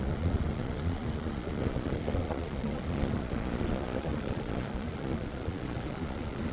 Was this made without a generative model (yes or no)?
no